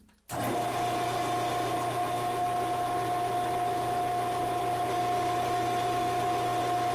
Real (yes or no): yes